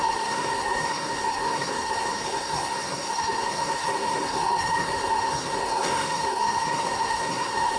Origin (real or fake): fake